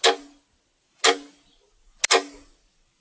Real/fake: real